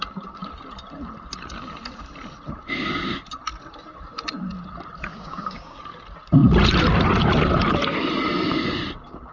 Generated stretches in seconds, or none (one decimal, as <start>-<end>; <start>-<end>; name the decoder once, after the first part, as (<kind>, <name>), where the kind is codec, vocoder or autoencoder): 5.1-5.8 (codec, DAC)